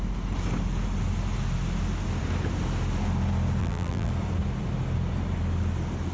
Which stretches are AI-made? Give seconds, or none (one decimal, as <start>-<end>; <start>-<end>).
3.6-4.1